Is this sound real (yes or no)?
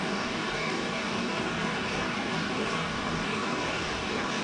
no